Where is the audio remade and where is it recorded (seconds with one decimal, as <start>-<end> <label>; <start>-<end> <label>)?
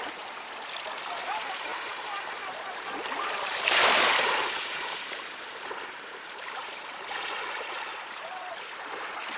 0.0-1.7 recorded; 1.7-5.7 remade; 5.7-7.9 recorded; 7.9-8.5 remade; 8.5-9.4 recorded